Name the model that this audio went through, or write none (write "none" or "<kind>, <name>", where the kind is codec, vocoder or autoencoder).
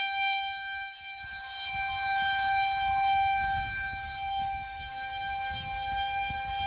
autoencoder, DAC-VAE